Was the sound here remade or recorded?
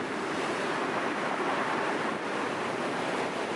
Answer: remade